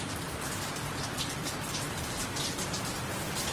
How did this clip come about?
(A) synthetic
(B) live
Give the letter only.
A